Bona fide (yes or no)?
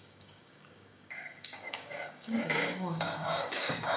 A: no